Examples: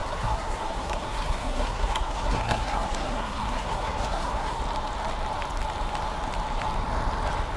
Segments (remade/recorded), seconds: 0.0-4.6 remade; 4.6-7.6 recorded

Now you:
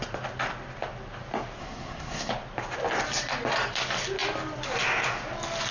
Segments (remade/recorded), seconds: 0.0-1.6 recorded; 1.6-2.3 remade; 2.3-5.7 recorded

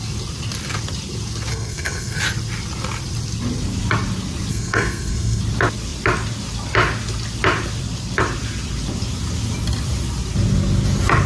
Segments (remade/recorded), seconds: 0.0-1.5 recorded; 1.5-2.2 remade; 2.2-4.5 recorded; 4.5-5.4 remade; 5.4-11.3 recorded

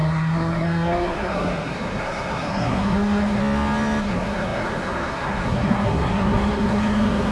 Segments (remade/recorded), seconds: 0.0-3.4 remade; 3.4-4.0 recorded; 4.0-7.3 remade

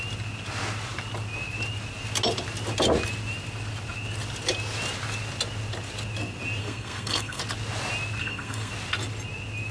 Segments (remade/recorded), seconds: 0.0-6.6 recorded; 6.6-7.4 remade; 7.4-8.2 recorded; 8.2-8.7 remade; 8.7-9.7 recorded

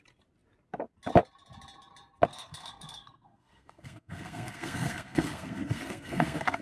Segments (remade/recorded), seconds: 0.0-2.3 recorded; 2.3-6.6 remade

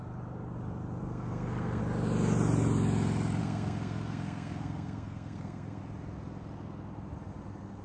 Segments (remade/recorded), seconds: 0.0-1.0 recorded; 1.0-1.8 remade; 1.8-3.4 recorded; 3.4-5.8 remade; 5.8-7.8 recorded